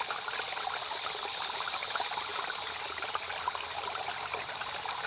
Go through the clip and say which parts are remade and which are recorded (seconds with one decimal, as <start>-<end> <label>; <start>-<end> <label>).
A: 0.0-5.1 recorded